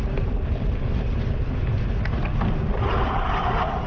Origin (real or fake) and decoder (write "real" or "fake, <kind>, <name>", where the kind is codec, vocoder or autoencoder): real